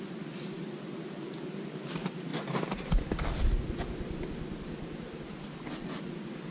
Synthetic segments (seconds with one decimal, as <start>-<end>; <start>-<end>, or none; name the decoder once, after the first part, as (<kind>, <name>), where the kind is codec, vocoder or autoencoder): none